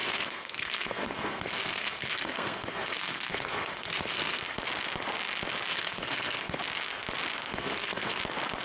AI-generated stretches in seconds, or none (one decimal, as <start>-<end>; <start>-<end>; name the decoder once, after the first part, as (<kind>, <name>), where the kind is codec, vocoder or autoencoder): 0.0-4.4 (codec, SNAC); 5.7-6.6; 7.5-8.2